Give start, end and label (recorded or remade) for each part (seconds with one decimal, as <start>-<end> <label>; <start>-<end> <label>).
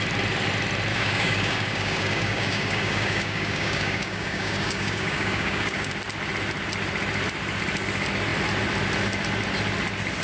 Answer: 0.0-0.9 recorded; 0.9-5.9 remade; 5.9-10.2 recorded